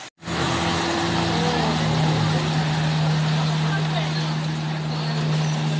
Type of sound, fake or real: real